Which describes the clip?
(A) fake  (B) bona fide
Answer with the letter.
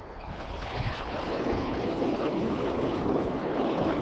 A